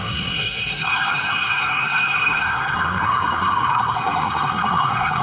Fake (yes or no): yes